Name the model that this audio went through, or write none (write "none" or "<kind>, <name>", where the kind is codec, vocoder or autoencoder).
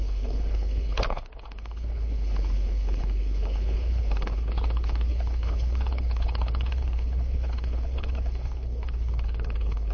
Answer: codec, HILCodec